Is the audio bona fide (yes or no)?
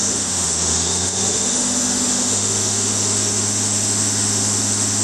no